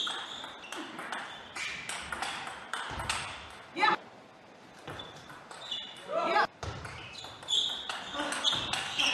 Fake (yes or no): no